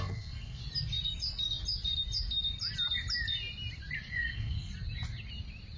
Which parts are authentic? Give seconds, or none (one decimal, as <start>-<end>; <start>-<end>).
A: 0.6-4.1; 4.7-5.8